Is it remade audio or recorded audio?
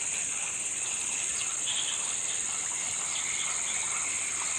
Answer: recorded